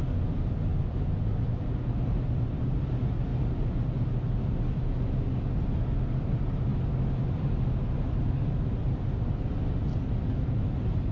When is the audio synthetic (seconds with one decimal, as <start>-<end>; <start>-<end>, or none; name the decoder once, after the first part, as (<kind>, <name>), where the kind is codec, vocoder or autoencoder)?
0.7-2.9 (vocoder, BigVGAN v2); 3.3-3.8